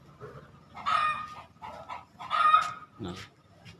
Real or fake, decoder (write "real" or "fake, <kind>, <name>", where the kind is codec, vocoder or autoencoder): real